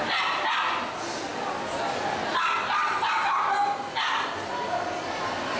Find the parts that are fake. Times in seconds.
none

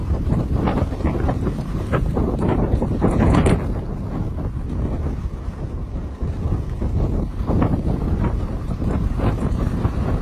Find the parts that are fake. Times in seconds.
0.0-3.5; 7.3-10.2

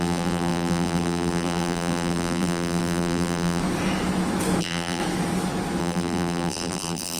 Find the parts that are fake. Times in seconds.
0.0-3.6; 4.6-5.0; 5.8-7.2

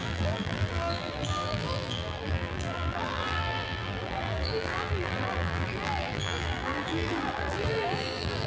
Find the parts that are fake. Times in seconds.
0.0-8.5

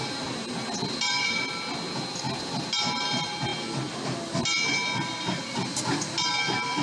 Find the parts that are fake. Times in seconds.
none

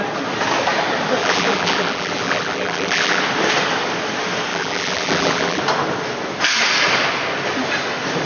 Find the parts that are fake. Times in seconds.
1.2-3.2; 4.5-5.6

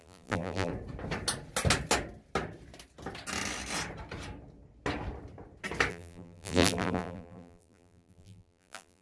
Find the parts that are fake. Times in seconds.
0.0-0.7; 5.9-9.0